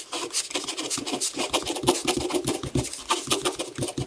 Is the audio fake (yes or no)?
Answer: no